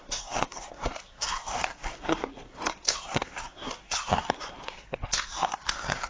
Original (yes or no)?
no